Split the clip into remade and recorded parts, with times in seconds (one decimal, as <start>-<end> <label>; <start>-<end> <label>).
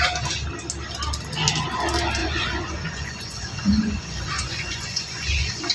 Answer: 0.0-2.2 recorded; 2.2-5.7 remade